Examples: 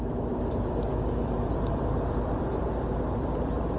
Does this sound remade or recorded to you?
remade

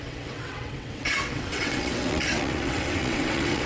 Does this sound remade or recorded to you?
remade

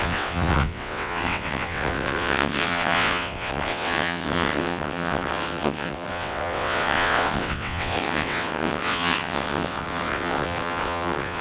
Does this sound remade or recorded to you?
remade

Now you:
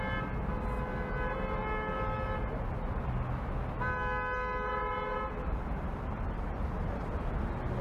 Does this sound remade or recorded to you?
recorded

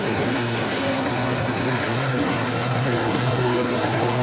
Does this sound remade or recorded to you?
remade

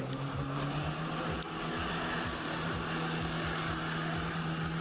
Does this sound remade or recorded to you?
recorded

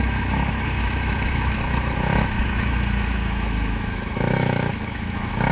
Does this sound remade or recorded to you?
remade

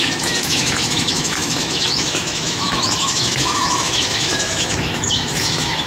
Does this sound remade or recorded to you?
remade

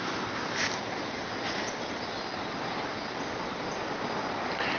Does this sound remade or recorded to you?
recorded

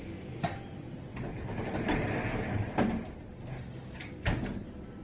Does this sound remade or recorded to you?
recorded